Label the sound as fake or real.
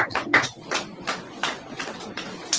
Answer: fake